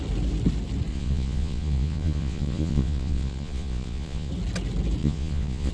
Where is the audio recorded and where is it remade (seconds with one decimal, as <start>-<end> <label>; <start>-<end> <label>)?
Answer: 0.0-0.9 recorded; 0.9-4.3 remade; 4.3-5.0 recorded; 5.0-5.7 remade